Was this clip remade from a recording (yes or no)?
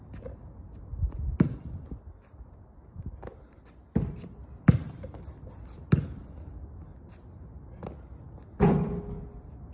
no